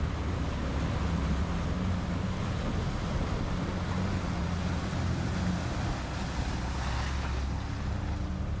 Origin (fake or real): real